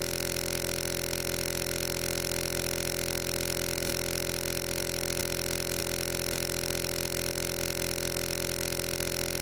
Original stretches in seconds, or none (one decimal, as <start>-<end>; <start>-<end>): none